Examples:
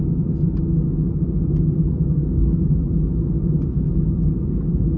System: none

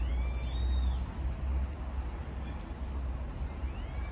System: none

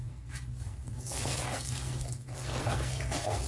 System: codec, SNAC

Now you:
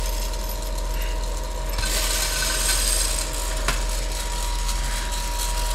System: none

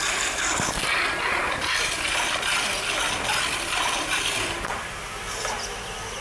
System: none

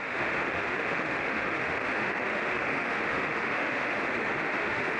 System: autoencoder, DAC-VAE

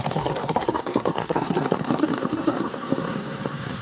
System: codec, SNAC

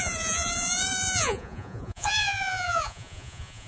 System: vocoder, Vocos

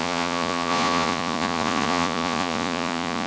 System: vocoder, Vocos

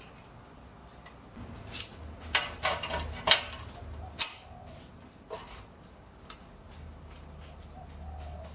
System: none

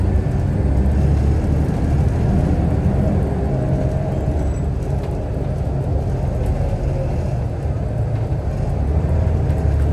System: none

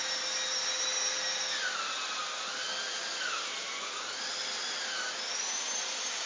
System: none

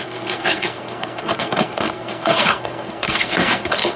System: codec, SNAC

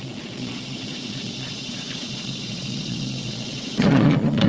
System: vocoder, Vocos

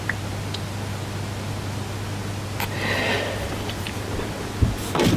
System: none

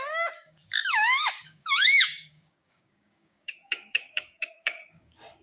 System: codec, DAC